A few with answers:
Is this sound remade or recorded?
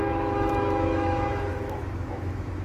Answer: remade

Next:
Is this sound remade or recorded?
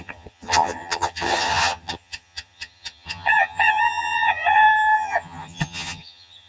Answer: remade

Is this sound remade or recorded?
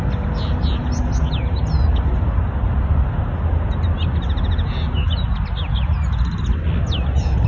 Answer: recorded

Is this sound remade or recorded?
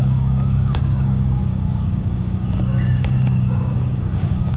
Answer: remade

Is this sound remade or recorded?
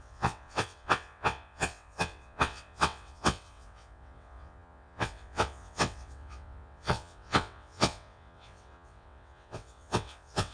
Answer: remade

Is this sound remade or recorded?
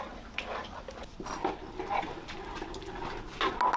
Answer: recorded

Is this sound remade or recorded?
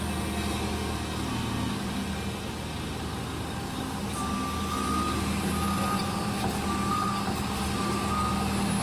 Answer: recorded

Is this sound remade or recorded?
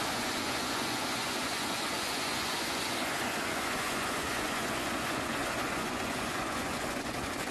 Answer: remade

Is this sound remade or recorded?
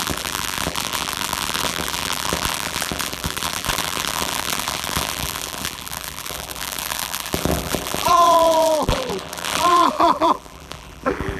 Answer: remade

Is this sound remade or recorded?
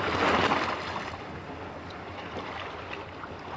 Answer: recorded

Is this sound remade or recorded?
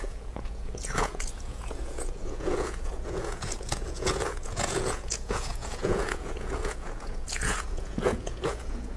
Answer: remade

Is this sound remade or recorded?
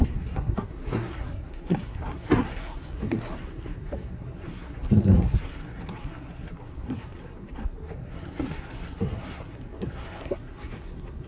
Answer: remade